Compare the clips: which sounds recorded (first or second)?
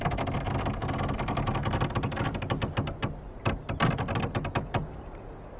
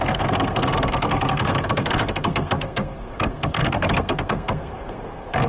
first